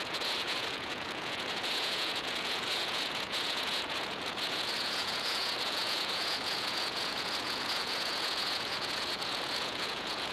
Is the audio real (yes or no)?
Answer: no